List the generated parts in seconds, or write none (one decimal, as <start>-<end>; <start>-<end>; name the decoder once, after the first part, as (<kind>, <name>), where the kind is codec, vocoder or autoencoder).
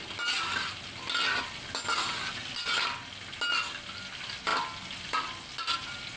none